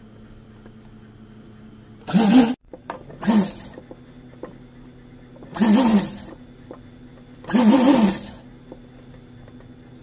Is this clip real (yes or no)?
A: yes